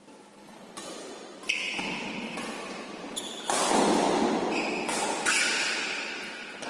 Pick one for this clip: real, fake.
real